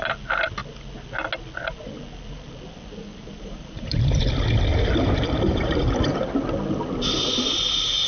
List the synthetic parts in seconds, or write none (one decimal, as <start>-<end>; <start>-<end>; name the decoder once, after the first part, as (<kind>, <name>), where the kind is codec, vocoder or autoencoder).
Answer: 3.1-4.2 (vocoder, BigVGAN v2); 4.7-6.3